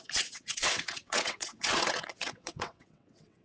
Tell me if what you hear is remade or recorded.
remade